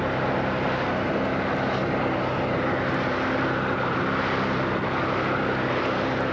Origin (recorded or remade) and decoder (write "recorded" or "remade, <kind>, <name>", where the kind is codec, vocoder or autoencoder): recorded